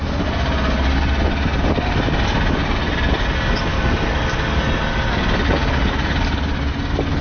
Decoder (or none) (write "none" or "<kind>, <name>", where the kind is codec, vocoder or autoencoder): none